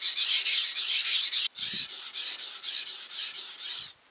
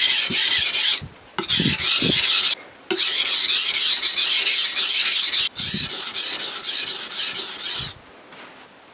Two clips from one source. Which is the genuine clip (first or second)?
second